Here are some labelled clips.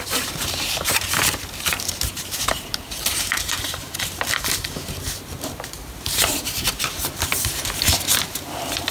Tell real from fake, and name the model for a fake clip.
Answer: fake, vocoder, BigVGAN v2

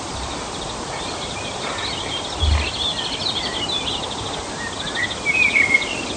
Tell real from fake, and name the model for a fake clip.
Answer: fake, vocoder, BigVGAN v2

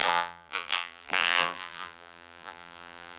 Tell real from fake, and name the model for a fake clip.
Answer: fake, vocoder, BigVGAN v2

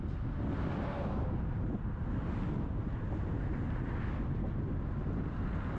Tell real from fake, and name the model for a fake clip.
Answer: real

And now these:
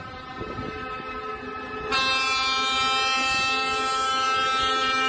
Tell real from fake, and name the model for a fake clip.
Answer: real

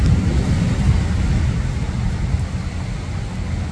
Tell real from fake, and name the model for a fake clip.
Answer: real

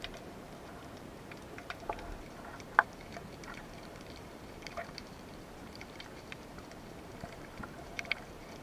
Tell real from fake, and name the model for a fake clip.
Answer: fake, vocoder, BigVGAN v2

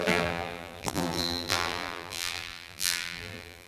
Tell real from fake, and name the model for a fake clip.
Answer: fake, vocoder, BigVGAN v2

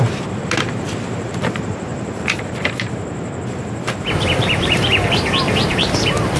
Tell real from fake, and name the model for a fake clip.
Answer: fake, vocoder, BigVGAN v2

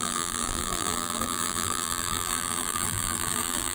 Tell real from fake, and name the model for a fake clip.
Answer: fake, vocoder, BigVGAN v2